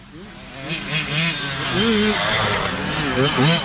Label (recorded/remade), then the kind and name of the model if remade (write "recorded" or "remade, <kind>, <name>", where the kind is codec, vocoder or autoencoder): recorded